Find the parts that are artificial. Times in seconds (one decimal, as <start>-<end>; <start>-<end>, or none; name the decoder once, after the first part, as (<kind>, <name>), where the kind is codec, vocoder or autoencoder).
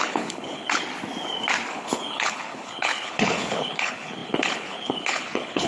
0.0-0.8 (codec, HILCodec); 1.7-5.7